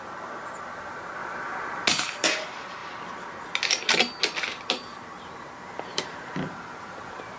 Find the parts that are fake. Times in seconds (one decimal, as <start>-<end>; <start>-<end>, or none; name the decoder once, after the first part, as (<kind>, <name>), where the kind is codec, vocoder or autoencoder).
4.9-7.4 (vocoder, BigVGAN v2)